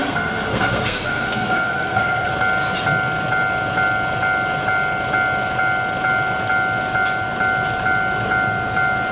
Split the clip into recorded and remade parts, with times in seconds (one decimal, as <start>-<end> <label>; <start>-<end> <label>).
0.0-2.3 remade; 2.3-9.1 recorded